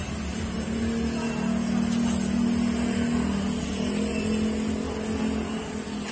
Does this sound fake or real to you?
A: real